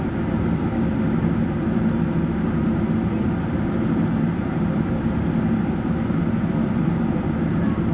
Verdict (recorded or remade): recorded